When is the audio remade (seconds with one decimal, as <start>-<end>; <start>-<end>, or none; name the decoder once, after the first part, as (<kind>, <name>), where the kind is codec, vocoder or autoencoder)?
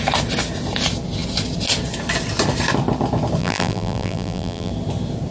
3.4-4.7 (vocoder, BigVGAN v2)